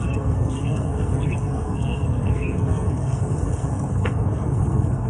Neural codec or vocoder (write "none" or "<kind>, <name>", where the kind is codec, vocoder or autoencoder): codec, SNAC